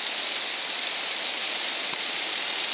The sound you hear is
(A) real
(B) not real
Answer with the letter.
A